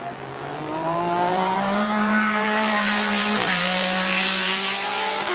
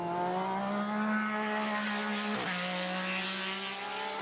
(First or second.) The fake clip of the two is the first